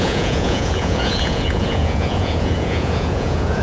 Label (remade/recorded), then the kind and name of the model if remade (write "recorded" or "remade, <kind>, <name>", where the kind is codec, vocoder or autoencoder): remade, vocoder, Vocos